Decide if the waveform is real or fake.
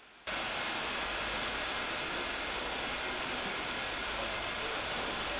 real